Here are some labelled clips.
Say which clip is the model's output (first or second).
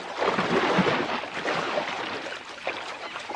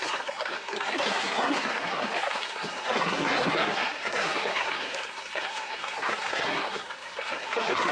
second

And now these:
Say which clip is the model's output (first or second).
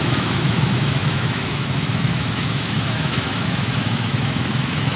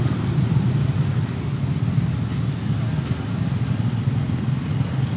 first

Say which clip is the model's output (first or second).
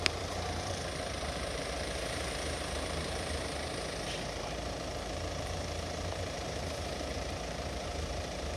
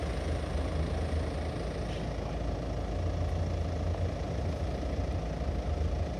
first